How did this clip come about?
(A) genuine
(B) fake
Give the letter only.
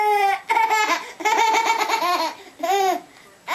A